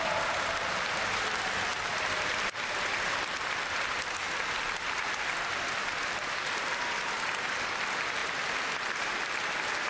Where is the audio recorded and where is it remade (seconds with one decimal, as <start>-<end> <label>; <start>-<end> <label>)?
0.0-1.7 recorded; 1.7-5.6 remade; 5.6-9.9 recorded